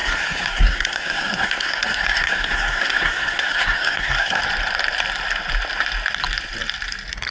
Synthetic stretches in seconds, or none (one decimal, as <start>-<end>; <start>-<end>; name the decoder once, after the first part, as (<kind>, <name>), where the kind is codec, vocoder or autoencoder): 0.0-4.4 (codec, SNAC)